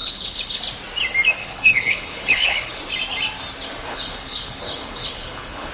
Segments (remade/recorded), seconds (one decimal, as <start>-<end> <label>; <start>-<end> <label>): 0.0-0.6 remade; 0.6-1.4 recorded; 1.4-2.8 remade; 2.8-3.9 recorded; 3.9-5.7 remade